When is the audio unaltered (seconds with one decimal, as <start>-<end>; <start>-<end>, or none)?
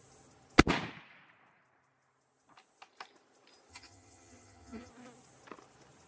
0.0-3.7; 4.9-6.1